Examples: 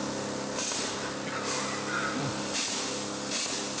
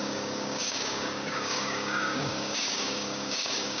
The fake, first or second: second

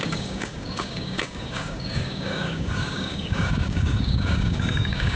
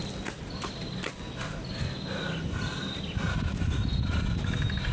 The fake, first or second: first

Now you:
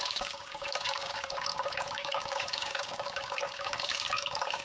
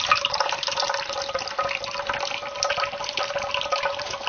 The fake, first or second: first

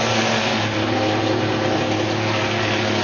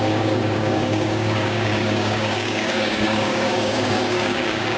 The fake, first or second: second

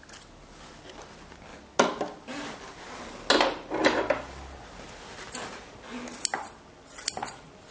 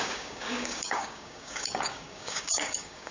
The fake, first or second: second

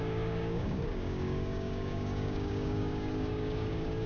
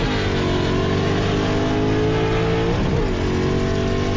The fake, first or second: first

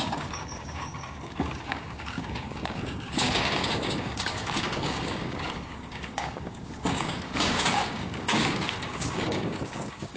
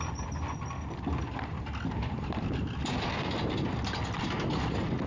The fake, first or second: first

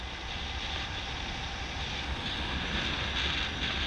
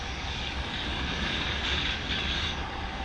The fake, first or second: second